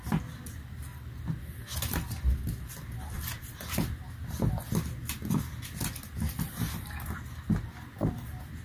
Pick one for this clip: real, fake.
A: real